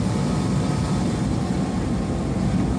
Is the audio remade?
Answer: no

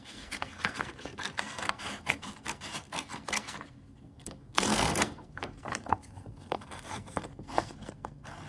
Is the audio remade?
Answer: yes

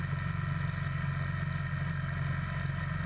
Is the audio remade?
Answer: no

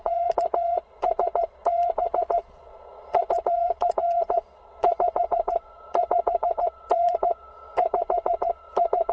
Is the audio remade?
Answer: yes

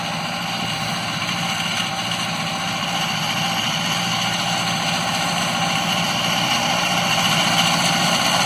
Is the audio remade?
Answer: no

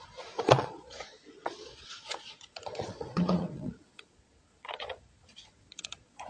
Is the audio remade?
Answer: yes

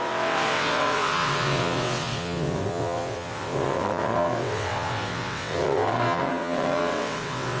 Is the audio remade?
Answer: yes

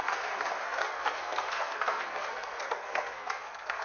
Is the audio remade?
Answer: yes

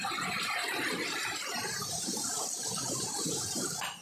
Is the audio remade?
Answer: yes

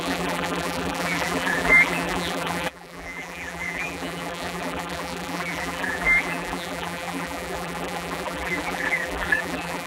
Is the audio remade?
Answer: yes